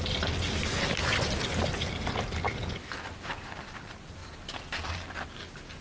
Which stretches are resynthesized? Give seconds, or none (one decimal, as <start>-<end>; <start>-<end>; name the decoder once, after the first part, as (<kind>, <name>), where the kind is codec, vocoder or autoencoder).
none